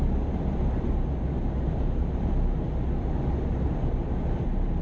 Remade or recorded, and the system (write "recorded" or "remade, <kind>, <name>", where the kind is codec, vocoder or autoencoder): recorded